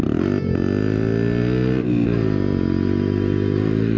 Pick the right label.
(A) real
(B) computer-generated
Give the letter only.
A